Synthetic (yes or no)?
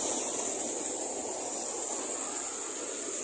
no